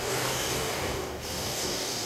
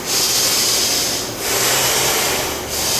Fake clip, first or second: first